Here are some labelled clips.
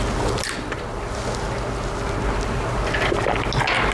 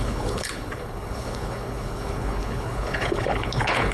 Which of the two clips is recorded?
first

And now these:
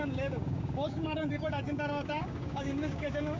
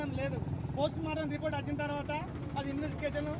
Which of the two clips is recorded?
second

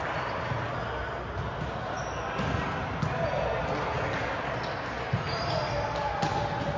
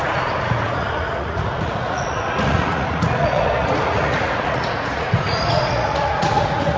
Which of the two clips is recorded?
first